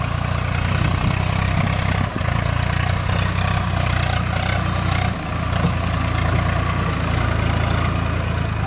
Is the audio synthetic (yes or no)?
no